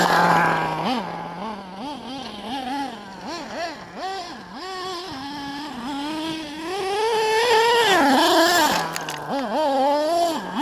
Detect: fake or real real